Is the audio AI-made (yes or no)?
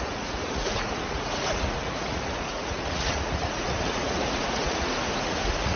yes